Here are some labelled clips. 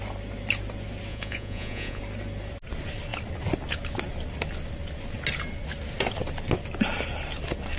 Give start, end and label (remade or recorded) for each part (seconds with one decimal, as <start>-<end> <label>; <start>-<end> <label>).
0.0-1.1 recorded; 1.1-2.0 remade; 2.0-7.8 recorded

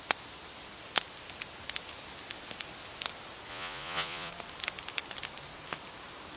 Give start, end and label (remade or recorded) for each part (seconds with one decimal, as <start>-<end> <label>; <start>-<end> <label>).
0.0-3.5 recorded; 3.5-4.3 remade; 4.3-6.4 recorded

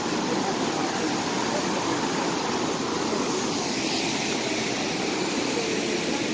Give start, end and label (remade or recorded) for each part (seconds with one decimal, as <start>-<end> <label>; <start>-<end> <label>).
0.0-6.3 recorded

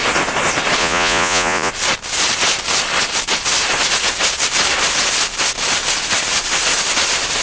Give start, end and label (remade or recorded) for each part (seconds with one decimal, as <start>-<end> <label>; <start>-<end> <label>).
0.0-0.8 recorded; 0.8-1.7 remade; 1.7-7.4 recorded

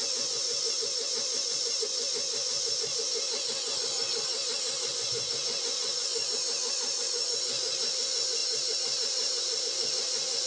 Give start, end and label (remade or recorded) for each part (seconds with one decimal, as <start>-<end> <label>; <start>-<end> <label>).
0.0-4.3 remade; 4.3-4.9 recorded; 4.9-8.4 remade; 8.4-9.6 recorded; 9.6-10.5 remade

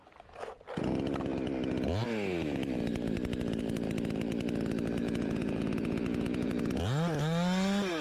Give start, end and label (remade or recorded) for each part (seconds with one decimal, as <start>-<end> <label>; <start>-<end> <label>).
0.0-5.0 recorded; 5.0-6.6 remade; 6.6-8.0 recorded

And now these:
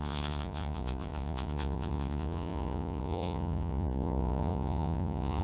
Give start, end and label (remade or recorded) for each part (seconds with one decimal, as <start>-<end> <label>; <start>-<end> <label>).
0.0-5.4 remade